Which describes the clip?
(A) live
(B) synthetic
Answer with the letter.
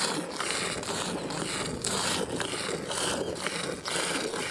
A